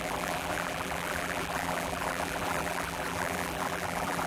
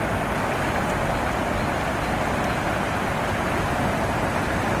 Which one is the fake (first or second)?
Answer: first